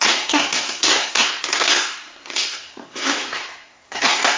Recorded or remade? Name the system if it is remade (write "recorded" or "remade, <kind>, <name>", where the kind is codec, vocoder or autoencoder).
remade, codec, SNAC